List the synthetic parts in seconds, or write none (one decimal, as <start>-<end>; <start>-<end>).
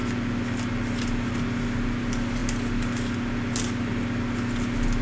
none